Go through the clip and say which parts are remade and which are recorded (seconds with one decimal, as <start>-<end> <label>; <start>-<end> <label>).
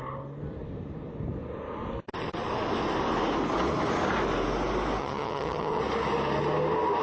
0.0-5.0 recorded; 5.0-5.8 remade; 5.8-7.0 recorded